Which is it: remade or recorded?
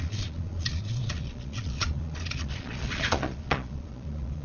remade